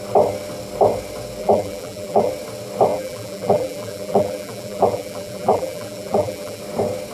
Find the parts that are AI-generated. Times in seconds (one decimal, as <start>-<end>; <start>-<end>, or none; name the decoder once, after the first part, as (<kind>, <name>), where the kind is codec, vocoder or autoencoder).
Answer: 1.4-2.3 (vocoder, BigVGAN v2); 2.9-6.6